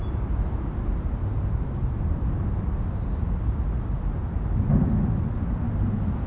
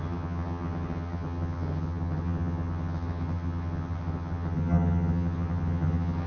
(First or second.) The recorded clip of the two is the first